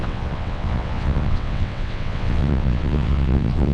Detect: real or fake fake